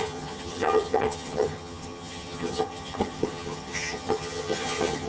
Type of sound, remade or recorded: remade